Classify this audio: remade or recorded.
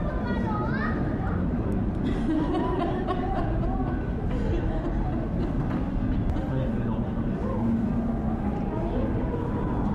recorded